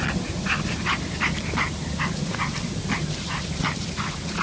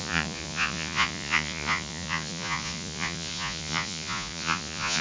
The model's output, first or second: second